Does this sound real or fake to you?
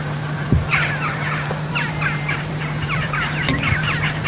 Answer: fake